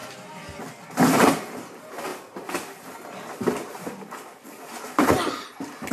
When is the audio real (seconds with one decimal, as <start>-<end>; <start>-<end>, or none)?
0.0-2.1